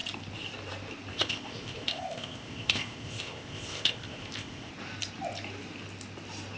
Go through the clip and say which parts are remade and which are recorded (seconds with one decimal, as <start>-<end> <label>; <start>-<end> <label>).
0.0-1.1 recorded; 1.1-4.7 remade; 4.7-6.6 recorded